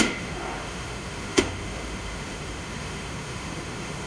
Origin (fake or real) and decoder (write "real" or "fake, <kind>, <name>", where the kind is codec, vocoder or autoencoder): fake, autoencoder, DAC-VAE